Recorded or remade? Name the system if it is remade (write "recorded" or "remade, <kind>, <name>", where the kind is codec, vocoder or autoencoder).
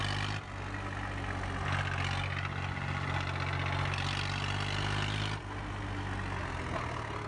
recorded